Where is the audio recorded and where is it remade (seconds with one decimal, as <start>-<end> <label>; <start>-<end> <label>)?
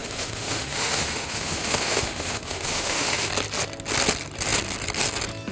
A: 0.0-3.3 remade; 3.3-5.5 recorded